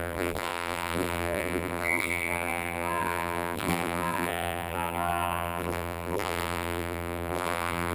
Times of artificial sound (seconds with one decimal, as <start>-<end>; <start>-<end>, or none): 0.0-7.9